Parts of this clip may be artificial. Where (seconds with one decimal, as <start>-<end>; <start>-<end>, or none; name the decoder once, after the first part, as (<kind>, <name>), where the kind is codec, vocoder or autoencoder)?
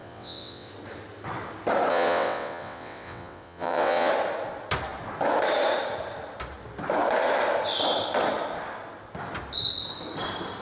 0.0-0.7 (vocoder, WaveNeXt); 1.9-4.1